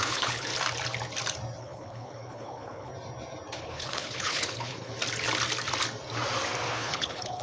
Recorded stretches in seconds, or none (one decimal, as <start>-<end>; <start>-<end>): 0.5-1.6; 2.9-3.6; 4.9-6.7